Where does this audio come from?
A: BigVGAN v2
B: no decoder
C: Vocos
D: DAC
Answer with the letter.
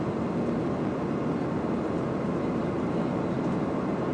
B